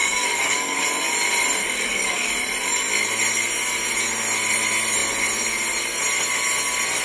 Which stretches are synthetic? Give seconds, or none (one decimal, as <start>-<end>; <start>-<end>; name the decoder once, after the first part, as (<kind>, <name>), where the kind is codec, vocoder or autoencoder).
0.0-0.8 (codec, DAC); 1.6-2.3